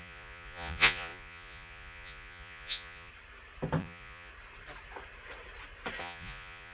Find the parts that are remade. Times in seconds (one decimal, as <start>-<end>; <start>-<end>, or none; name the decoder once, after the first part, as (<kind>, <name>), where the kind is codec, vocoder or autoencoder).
0.0-3.1 (vocoder, Vocos); 3.8-4.3; 6.0-6.7